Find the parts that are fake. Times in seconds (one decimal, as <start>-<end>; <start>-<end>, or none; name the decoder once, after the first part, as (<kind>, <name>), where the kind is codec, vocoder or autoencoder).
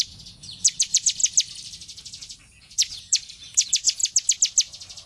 0.0-1.2 (vocoder, Vocos); 2.6-4.0